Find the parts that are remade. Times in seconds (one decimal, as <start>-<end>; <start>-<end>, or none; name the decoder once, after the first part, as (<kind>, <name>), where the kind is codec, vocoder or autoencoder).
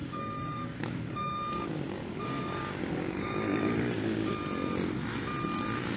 0.0-1.6 (codec, DAC); 2.0-4.3